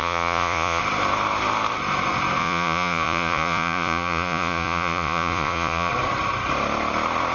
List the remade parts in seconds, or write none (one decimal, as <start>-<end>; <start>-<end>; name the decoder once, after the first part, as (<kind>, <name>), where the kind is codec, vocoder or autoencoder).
0.0-0.8 (vocoder, Vocos); 2.4-5.9